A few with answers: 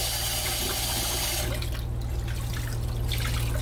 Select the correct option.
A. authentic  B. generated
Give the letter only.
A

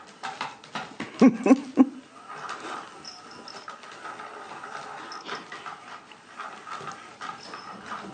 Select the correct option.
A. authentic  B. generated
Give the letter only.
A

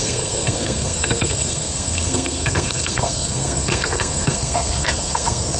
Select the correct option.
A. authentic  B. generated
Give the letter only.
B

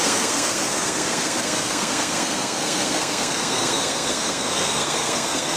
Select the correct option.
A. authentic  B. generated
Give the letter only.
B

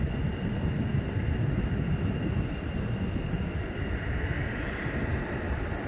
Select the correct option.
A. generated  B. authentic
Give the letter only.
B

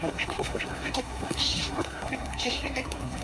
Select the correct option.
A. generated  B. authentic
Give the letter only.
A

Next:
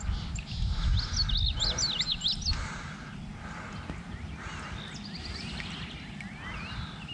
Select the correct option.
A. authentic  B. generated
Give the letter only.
A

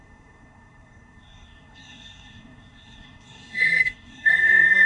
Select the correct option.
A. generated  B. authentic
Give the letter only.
A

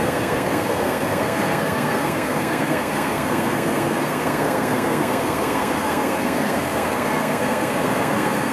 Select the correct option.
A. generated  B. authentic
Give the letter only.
A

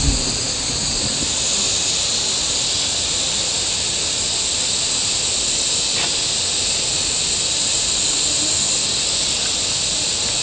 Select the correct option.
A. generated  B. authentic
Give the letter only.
B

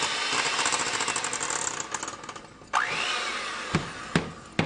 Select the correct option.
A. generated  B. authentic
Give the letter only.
B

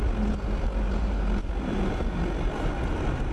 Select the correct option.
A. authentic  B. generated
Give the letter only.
A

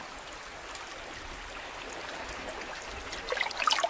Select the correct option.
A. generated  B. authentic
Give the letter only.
B